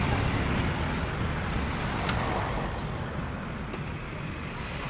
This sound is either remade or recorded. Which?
recorded